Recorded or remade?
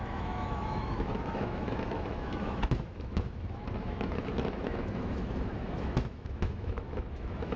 remade